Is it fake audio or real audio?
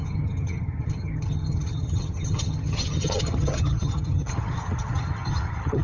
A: fake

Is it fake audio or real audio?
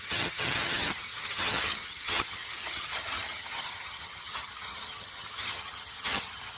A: fake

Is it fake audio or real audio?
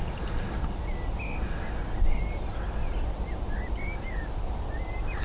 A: real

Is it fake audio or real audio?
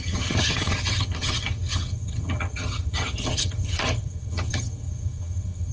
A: fake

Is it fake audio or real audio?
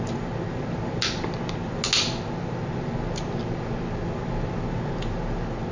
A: real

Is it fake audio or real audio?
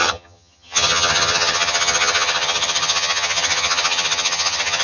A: fake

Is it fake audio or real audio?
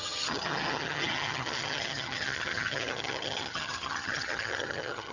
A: fake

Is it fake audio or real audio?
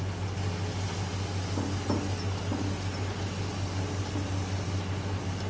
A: real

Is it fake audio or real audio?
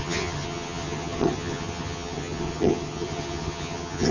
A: fake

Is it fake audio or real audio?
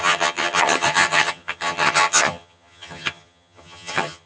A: fake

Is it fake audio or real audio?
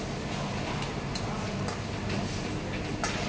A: real